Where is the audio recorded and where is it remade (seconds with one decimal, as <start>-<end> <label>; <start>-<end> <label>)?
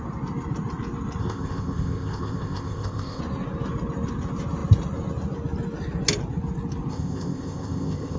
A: 0.0-1.2 recorded; 1.2-3.2 remade; 3.2-6.9 recorded; 6.9-8.2 remade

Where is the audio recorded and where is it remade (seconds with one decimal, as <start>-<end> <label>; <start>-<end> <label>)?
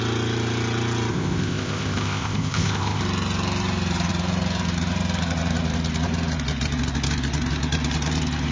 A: 0.0-1.1 recorded; 1.1-3.0 remade; 3.0-8.5 recorded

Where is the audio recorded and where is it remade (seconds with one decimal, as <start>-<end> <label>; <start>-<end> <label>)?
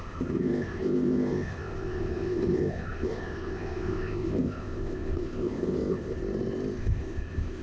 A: 0.0-6.2 remade; 6.2-6.8 recorded; 6.8-7.6 remade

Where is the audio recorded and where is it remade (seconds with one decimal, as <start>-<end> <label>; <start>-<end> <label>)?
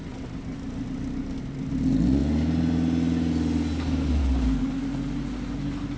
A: 0.0-6.0 recorded